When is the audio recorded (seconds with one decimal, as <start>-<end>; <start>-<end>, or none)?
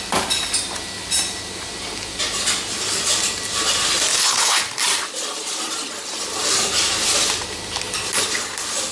0.0-4.1; 4.6-8.9